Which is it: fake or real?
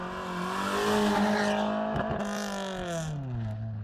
real